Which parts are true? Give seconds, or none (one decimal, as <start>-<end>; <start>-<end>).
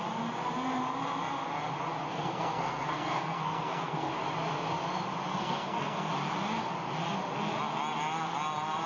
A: 0.0-2.1; 4.1-5.3; 6.1-8.9